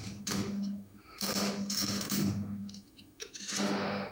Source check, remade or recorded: remade